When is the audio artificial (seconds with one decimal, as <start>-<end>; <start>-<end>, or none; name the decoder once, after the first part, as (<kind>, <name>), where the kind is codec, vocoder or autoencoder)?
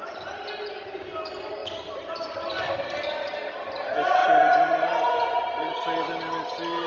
4.2-5.7 (vocoder, Vocos)